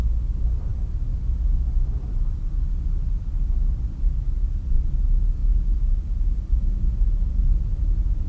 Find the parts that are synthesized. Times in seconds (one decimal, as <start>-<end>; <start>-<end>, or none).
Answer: none